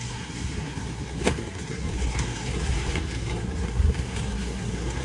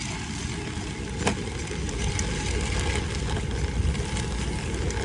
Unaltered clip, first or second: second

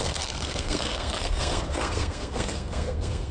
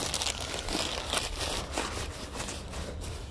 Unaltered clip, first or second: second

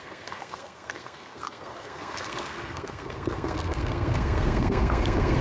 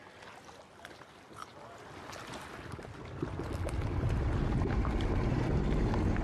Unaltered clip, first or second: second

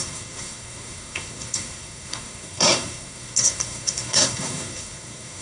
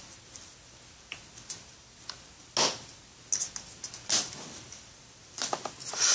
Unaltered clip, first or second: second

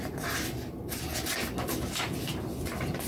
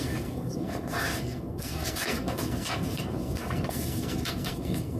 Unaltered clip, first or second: first